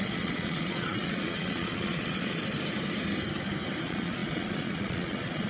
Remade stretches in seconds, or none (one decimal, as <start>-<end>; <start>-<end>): 0.0-2.4; 3.8-5.5